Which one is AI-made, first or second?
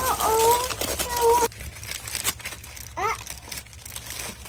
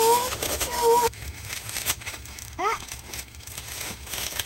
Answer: second